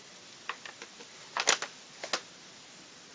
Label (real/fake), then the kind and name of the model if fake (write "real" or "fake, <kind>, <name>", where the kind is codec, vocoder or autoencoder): real